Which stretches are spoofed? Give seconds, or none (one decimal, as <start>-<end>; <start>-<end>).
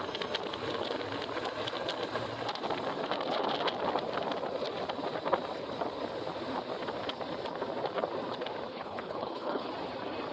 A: 8.7-9.7